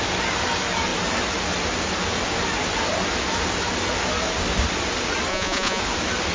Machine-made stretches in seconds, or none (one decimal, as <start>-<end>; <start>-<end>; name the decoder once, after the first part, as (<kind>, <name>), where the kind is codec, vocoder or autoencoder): 5.3-5.8 (vocoder, Vocos)